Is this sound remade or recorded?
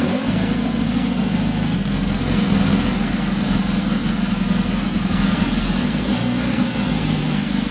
remade